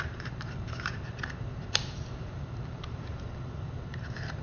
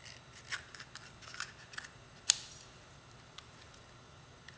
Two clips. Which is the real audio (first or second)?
second